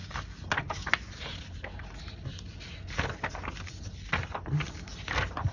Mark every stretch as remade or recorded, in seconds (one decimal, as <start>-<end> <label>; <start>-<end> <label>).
0.0-5.5 recorded